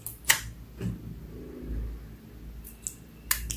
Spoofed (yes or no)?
no